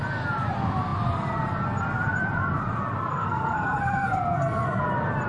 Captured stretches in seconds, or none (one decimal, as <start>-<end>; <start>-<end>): 0.0-3.1; 4.8-5.3

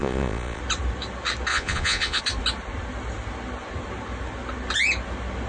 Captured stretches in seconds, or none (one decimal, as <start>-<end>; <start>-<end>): 0.6-1.5; 2.2-5.5